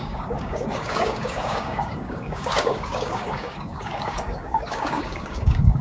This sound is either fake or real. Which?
fake